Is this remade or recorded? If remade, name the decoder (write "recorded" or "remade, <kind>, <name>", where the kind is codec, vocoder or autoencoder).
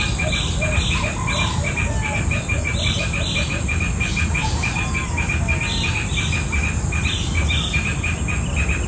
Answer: recorded